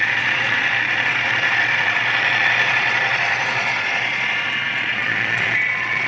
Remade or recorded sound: remade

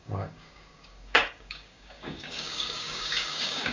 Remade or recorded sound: remade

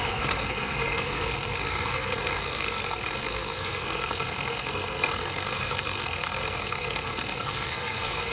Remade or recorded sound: remade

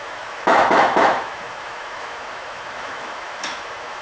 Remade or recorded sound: remade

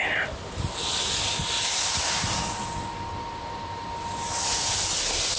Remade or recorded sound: recorded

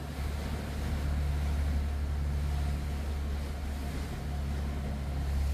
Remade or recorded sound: recorded